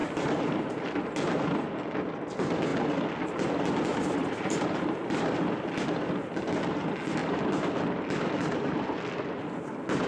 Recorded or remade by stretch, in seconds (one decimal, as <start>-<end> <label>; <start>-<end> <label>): 0.0-1.0 remade; 1.0-3.9 recorded; 3.9-5.4 remade; 5.4-10.1 recorded